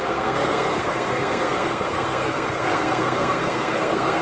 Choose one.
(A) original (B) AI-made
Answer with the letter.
B